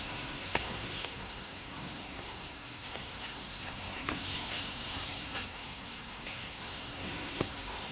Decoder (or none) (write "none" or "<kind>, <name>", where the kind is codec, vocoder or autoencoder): codec, SNAC